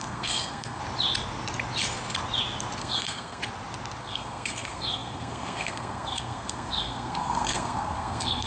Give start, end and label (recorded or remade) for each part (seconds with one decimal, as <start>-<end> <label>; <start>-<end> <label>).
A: 0.0-0.8 remade; 0.8-2.8 recorded; 2.8-3.4 remade; 3.4-4.0 recorded; 4.0-8.5 remade